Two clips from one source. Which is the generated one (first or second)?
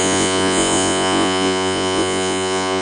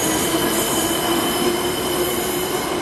first